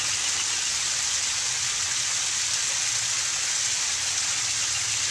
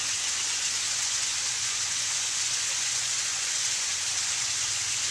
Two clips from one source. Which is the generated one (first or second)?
second